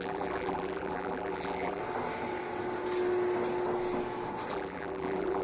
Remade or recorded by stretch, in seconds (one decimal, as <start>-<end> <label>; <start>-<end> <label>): 0.0-1.8 remade; 1.8-4.5 recorded; 4.5-5.4 remade